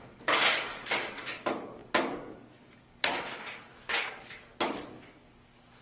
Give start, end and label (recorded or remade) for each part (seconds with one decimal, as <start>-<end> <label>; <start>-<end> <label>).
0.0-5.8 remade

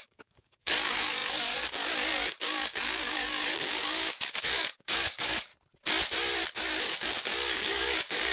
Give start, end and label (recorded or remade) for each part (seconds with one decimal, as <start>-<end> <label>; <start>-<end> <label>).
0.0-5.5 remade; 5.5-6.8 recorded; 6.8-8.3 remade

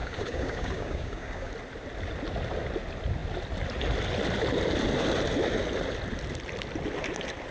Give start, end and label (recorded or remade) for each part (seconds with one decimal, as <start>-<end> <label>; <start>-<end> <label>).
0.0-1.5 remade; 1.5-7.5 recorded

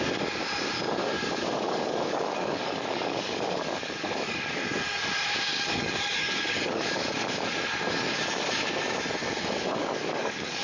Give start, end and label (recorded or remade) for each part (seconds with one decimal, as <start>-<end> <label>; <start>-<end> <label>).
0.0-1.0 recorded; 1.0-5.1 remade; 5.1-5.5 recorded; 5.5-7.5 remade; 7.5-9.2 recorded; 9.2-10.6 remade

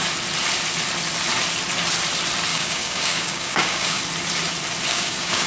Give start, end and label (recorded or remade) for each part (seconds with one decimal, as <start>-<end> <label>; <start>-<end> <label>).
0.0-2.5 recorded; 2.5-4.0 remade; 4.0-4.9 recorded; 4.9-5.5 remade

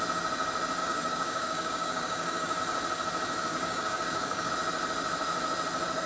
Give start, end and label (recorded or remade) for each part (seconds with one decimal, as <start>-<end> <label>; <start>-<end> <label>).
0.0-0.8 recorded; 0.8-2.6 remade; 2.6-3.5 recorded; 3.5-4.5 remade; 4.5-6.1 recorded

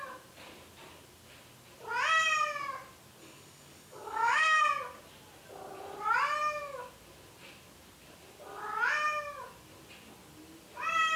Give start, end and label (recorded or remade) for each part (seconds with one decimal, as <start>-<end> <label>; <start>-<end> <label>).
0.0-3.2 recorded; 3.2-4.6 remade; 4.6-11.2 recorded